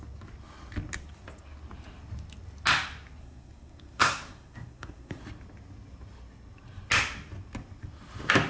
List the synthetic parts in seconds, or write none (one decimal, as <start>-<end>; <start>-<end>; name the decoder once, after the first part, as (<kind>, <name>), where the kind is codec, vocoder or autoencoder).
3.2-5.2 (codec, SNAC)